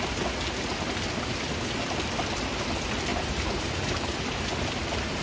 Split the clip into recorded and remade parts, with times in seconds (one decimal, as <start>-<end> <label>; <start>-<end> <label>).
0.0-3.1 recorded; 3.1-4.4 remade; 4.4-5.2 recorded